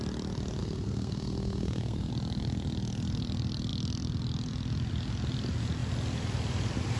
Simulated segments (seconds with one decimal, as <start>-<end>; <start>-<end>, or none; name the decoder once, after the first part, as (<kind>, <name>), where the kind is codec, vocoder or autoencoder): 0.6-2.1 (codec, SNAC)

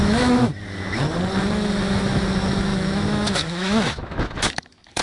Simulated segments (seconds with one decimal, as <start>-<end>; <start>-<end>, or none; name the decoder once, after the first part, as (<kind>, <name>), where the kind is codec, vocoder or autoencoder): 0.0-0.5 (autoencoder, DAC-VAE); 1.4-5.0

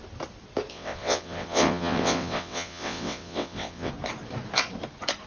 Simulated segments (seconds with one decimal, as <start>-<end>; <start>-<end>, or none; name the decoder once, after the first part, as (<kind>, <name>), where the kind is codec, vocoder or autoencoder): 0.7-3.9 (vocoder, WaveNeXt)

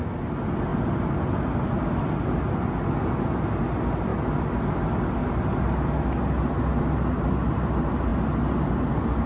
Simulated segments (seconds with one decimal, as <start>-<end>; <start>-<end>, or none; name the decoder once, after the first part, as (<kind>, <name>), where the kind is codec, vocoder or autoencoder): none

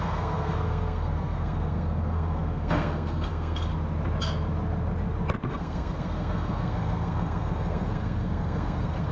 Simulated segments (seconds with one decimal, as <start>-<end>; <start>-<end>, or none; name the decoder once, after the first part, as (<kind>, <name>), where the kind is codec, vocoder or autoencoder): 0.0-3.7 (codec, SNAC); 5.5-9.1

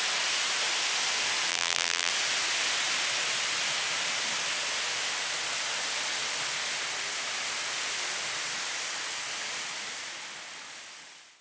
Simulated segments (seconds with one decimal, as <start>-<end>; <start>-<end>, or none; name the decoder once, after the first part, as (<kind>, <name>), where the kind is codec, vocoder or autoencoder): 1.5-2.1 (vocoder, BigVGAN v2)

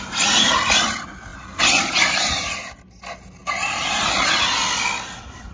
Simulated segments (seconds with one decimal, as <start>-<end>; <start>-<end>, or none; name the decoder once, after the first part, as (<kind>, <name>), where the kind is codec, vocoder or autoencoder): none

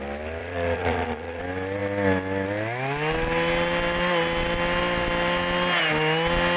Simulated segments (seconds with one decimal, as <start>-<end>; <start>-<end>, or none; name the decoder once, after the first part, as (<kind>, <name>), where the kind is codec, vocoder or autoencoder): 0.4-1.4 (vocoder, Vocos)